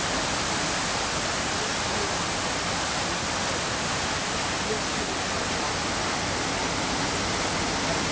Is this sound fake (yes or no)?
no